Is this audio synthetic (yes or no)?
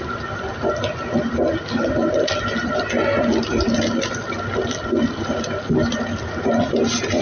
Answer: no